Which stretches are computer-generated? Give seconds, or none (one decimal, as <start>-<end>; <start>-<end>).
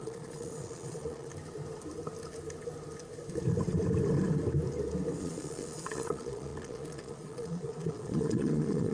0.0-1.3; 5.2-8.9